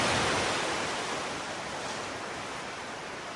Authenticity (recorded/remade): recorded